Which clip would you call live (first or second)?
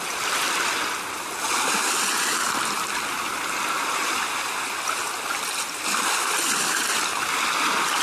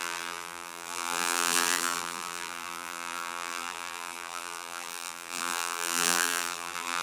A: first